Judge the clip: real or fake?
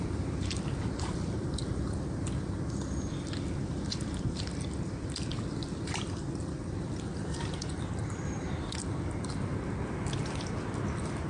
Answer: fake